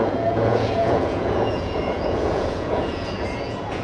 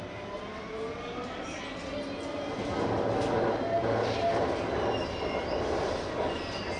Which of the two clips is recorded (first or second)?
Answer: second